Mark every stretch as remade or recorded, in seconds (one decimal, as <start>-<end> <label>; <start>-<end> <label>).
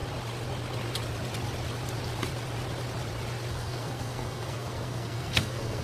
0.0-3.5 recorded; 3.5-5.8 remade